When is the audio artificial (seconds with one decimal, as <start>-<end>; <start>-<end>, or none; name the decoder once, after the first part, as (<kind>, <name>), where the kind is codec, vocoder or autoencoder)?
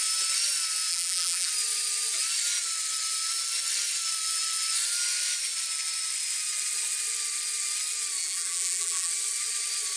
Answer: 0.9-1.5 (vocoder, BigVGAN v2); 8.2-9.1